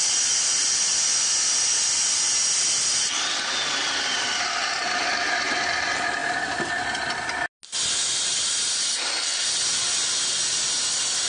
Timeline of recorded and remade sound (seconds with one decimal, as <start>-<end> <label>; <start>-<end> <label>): 0.0-11.3 recorded